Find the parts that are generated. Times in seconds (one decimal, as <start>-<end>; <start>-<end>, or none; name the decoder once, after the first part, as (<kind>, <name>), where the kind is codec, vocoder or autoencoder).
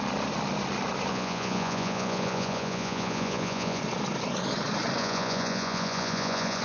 1.1-3.8 (vocoder, Vocos); 5.0-6.6